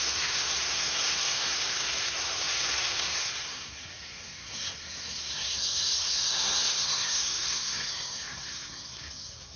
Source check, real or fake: fake